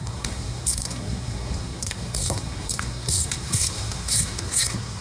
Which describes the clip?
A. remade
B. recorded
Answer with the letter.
A